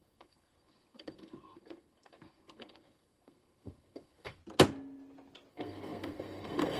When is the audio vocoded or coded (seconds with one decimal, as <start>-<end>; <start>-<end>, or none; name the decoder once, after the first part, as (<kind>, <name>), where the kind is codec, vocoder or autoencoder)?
0.0-4.4 (codec, SNAC); 5.5-6.8